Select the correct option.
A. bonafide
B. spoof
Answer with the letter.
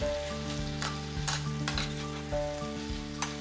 A